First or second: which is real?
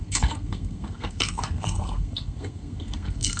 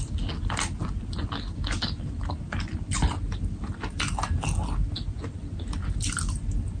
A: second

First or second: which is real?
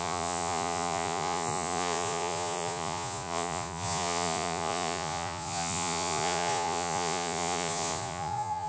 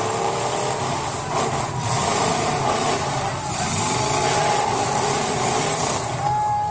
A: second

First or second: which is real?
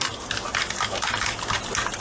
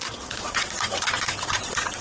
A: first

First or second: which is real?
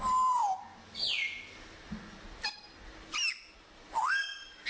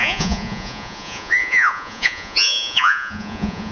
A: first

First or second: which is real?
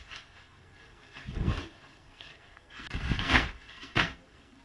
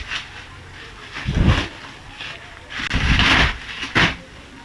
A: second